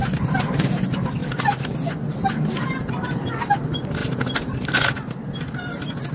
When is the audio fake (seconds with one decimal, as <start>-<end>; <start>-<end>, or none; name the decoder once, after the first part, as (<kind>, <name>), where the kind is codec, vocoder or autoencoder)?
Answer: none

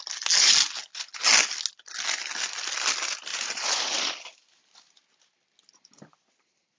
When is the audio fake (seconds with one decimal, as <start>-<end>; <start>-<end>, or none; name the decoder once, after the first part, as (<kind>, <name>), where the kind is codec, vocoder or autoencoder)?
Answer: 3.3-5.0 (vocoder, BigVGAN v2)

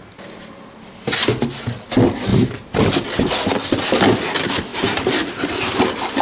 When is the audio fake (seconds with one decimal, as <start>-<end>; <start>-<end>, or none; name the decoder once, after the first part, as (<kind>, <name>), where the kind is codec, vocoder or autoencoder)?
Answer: 2.3-2.9 (vocoder, BigVGAN v2); 4.7-5.3